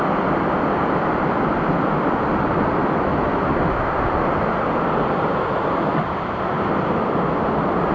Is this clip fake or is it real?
real